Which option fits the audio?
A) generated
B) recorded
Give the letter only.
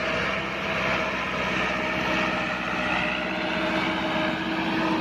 B